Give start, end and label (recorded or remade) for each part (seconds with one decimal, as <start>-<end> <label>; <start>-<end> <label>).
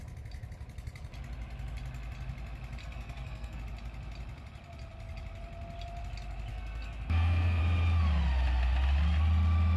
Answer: 0.0-2.8 recorded; 2.8-3.6 remade; 3.6-6.5 recorded; 6.5-7.6 remade; 7.6-9.8 recorded